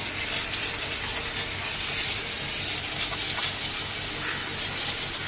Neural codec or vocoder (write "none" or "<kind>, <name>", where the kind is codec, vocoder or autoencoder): none